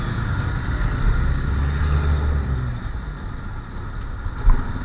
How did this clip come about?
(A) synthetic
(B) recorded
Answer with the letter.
B